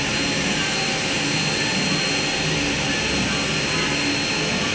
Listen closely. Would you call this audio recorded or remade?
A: recorded